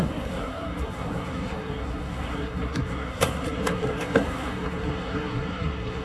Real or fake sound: fake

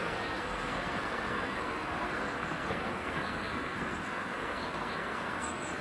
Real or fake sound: fake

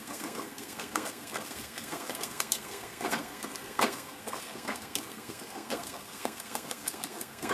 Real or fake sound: fake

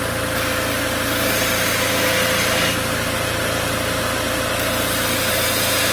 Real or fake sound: real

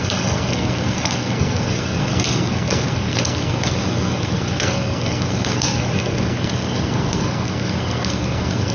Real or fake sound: fake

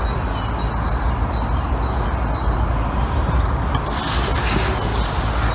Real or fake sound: real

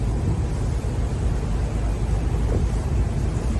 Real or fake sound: real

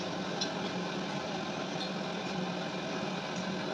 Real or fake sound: real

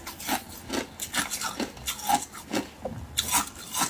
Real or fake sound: real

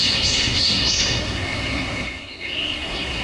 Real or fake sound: fake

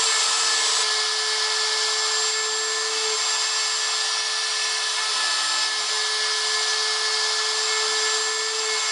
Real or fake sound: real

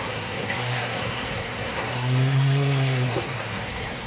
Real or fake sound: fake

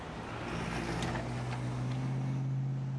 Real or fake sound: real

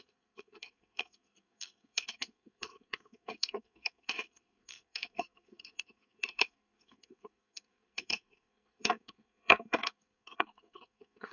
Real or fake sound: fake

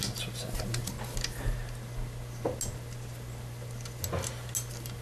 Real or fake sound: real